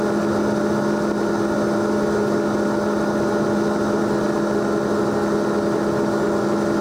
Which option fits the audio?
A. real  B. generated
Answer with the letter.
A